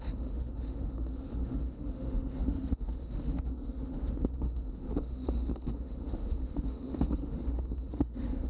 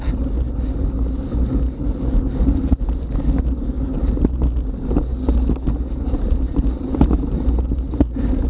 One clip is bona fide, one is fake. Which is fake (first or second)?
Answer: first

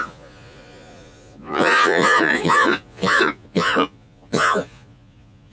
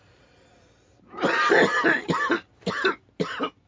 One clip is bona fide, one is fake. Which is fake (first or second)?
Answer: first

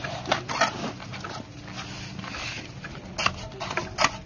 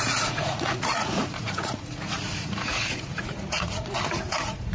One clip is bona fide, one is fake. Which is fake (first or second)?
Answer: second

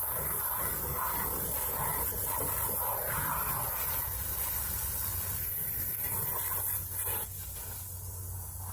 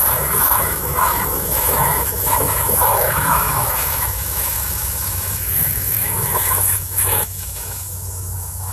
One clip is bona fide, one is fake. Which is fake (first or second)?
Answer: second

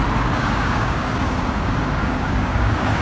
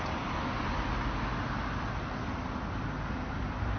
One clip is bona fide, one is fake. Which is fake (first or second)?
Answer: first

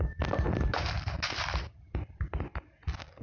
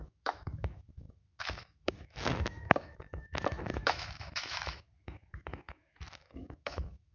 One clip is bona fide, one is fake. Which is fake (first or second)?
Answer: second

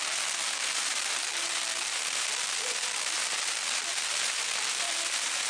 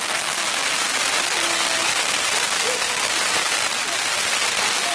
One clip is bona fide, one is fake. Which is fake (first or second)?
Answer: first